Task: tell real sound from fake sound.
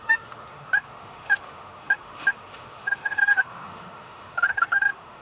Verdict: fake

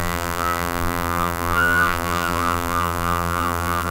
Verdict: fake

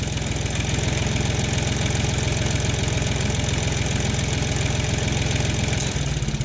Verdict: real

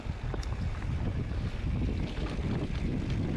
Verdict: real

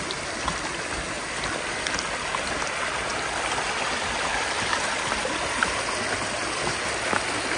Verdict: real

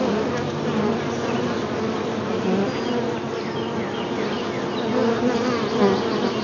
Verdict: real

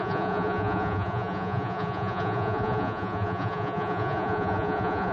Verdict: fake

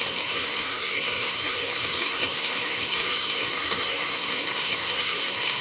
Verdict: fake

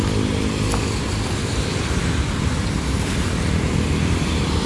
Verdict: fake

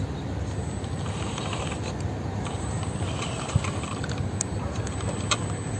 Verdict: real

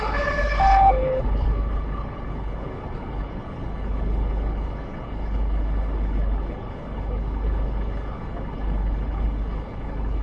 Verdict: fake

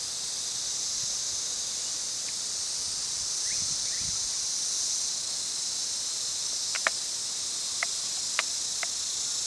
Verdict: real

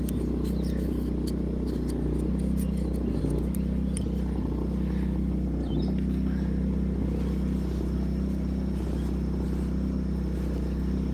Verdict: real